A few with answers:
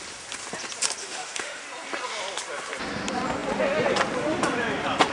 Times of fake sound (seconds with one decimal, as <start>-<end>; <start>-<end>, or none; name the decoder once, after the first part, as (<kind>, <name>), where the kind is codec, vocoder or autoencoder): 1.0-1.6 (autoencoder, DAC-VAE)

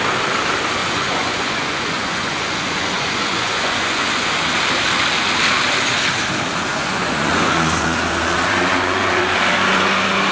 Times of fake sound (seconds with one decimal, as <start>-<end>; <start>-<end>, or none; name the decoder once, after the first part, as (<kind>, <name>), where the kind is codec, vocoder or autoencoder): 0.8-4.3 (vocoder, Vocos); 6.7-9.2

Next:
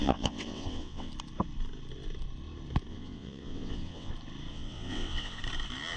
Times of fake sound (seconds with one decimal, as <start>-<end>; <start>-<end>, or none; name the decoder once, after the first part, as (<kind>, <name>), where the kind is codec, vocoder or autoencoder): 0.0-1.1 (vocoder, WaveNeXt); 2.9-4.1; 4.5-5.4

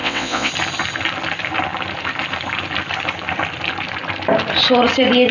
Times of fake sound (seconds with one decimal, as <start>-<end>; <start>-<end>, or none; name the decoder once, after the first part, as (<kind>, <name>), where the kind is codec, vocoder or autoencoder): 0.0-0.5 (vocoder, WaveNeXt)

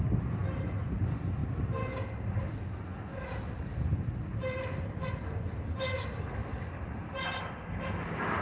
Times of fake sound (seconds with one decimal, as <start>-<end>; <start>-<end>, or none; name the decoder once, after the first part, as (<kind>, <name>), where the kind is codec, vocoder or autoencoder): none

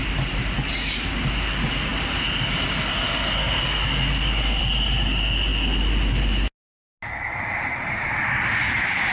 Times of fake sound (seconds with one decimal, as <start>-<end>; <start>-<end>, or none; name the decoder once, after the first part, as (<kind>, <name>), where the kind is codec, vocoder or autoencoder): none

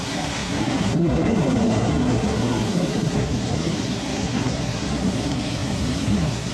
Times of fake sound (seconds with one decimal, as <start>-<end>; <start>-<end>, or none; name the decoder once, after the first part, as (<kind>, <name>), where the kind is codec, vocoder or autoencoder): 0.0-6.5 (codec, SNAC)

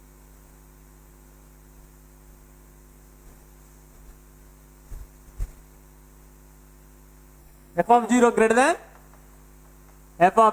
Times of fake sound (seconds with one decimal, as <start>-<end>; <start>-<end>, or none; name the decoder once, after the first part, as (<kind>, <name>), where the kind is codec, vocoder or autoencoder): 7.4-8.1 (codec, SNAC)